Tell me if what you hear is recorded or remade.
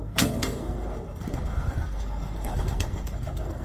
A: remade